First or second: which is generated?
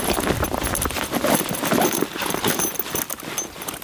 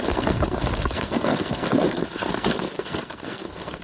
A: second